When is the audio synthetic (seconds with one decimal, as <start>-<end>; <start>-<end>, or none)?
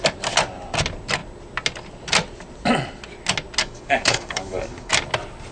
3.6-4.9